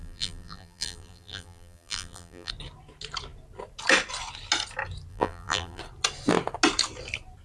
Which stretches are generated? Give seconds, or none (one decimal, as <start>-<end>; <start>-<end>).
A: 0.0-2.5; 5.1-5.8